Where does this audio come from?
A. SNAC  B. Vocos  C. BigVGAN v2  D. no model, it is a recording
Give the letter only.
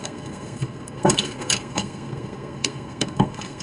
A